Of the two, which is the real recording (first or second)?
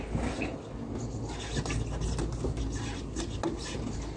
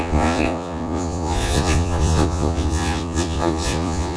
first